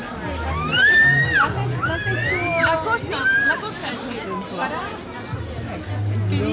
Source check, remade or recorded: recorded